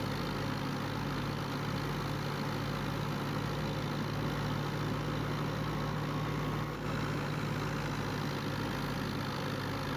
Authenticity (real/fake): real